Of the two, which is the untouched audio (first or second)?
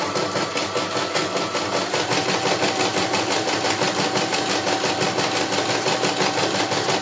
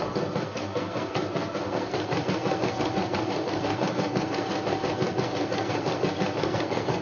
first